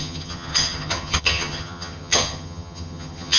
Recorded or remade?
remade